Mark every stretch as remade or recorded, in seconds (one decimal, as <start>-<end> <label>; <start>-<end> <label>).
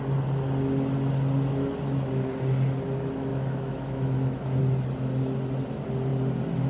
0.0-3.3 recorded; 3.3-4.6 remade; 4.6-6.7 recorded